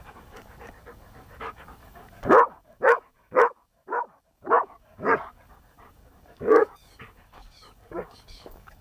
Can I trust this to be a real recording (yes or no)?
no